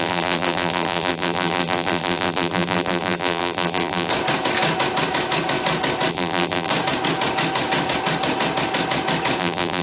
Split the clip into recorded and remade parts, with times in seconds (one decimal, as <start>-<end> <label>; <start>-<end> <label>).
0.0-4.1 remade; 4.1-6.1 recorded; 6.1-6.7 remade; 6.7-9.4 recorded; 9.4-9.8 remade